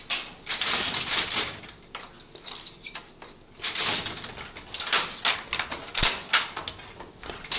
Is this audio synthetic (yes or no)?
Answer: no